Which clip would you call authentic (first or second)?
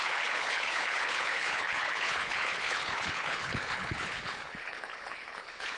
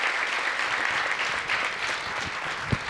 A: second